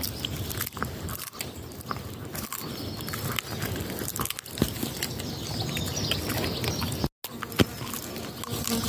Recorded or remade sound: recorded